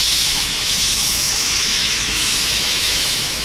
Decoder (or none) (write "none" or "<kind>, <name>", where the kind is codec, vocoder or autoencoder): autoencoder, DAC-VAE